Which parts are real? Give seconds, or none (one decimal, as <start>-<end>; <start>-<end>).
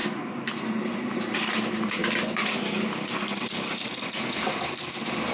1.6-2.0